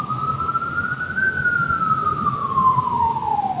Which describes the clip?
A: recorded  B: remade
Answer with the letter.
A